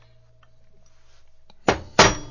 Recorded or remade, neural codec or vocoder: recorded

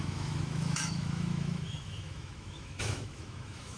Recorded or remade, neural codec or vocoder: remade, autoencoder, DAC-VAE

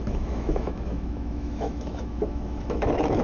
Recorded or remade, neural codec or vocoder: remade, autoencoder, DAC-VAE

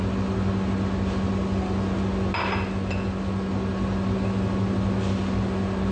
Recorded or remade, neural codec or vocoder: recorded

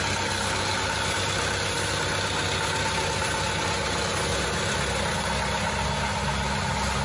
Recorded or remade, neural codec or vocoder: recorded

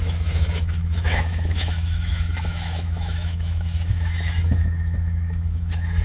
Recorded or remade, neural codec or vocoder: remade, autoencoder, DAC-VAE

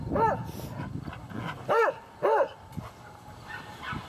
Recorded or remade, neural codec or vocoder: recorded